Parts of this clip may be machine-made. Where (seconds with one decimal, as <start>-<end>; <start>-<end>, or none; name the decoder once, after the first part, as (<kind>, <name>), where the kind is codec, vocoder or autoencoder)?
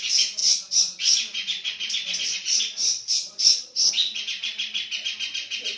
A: 0.4-3.9 (vocoder, Vocos)